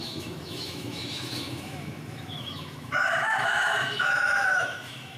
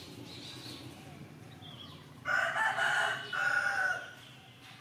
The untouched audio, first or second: second